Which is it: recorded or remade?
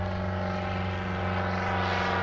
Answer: recorded